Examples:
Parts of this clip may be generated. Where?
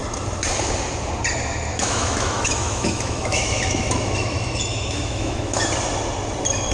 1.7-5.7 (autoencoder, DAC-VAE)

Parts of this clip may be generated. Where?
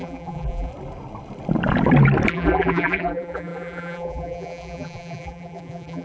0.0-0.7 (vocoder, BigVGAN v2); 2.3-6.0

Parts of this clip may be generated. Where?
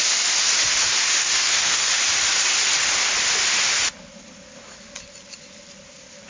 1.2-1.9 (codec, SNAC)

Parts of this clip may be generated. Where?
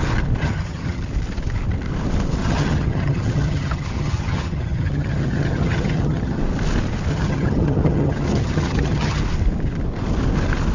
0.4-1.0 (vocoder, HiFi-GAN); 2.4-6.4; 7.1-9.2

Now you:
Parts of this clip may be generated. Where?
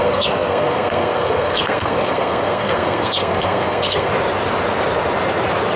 0.0-4.1 (codec, SNAC)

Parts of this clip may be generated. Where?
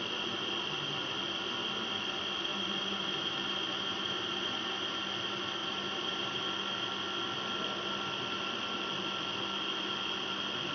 2.5-5.0 (vocoder, BigVGAN v2); 5.6-6.4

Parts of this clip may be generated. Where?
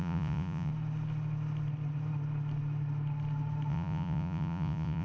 0.0-0.7 (vocoder, Vocos); 3.7-5.0